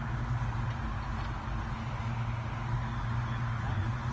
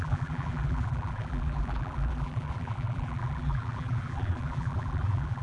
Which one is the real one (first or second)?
first